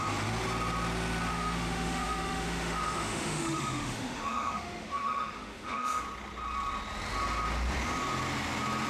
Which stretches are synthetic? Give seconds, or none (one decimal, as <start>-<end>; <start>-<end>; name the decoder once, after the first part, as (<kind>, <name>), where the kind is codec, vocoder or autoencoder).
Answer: 1.3-6.0 (autoencoder, DAC-VAE)